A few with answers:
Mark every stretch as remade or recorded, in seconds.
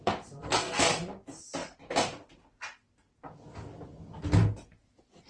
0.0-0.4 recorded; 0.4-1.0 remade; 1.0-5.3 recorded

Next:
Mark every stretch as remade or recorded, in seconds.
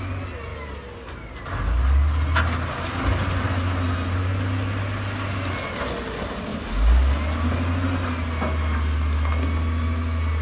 0.0-10.4 recorded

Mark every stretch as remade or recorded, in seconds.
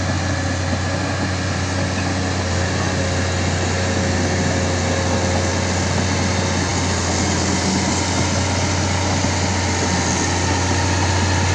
0.0-11.5 recorded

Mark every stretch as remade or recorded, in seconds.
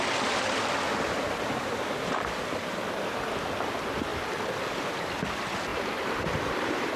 0.0-5.7 recorded; 5.7-7.0 remade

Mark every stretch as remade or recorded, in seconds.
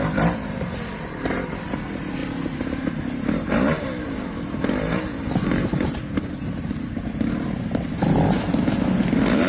0.0-9.5 remade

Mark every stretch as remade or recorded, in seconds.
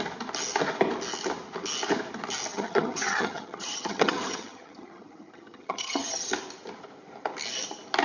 0.0-2.5 recorded; 2.5-6.3 remade; 6.3-8.0 recorded